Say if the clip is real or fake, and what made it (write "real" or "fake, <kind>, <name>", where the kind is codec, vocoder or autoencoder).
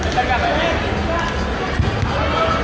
real